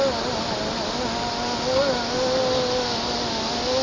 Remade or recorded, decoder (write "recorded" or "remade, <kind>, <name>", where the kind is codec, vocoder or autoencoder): recorded